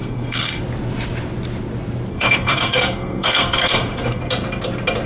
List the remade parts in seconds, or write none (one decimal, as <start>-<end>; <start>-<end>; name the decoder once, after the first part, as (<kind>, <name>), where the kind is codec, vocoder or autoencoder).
0.0-0.6 (codec, SNAC); 2.1-4.2